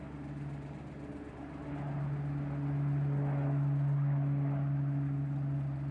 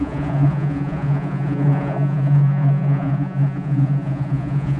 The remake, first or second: second